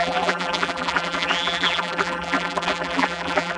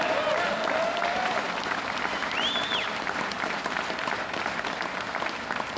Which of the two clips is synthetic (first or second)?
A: first